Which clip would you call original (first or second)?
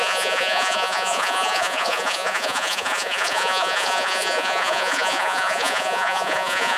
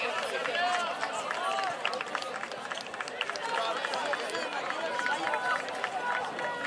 second